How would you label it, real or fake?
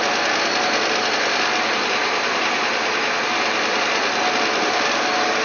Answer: real